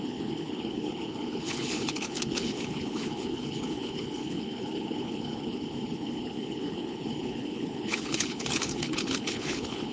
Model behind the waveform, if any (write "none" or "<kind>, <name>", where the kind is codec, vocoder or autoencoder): codec, HILCodec